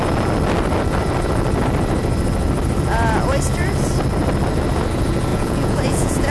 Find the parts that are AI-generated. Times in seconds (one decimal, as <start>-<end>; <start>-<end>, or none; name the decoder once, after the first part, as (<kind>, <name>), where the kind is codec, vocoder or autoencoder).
5.3-6.3 (vocoder, Vocos)